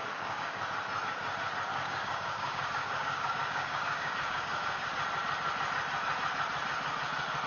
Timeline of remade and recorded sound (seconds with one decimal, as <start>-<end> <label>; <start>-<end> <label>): 0.0-0.6 remade; 0.6-1.7 recorded; 1.7-4.9 remade; 4.9-7.5 recorded